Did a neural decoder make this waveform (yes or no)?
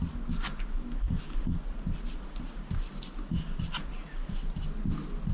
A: no